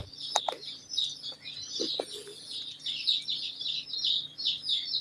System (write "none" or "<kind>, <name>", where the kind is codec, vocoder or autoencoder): none